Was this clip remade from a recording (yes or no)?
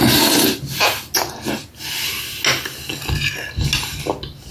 no